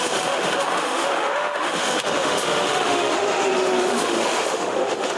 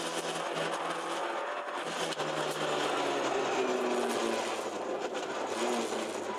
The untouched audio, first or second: second